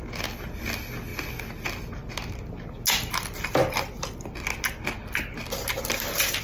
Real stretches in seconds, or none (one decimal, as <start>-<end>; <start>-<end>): 0.0-6.4